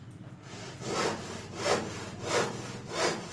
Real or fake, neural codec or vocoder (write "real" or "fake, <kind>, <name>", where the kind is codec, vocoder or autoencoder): real